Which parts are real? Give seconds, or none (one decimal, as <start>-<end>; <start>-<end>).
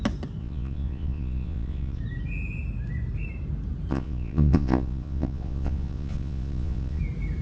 0.0-0.4; 2.0-3.9; 7.0-7.4